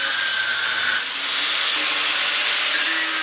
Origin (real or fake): real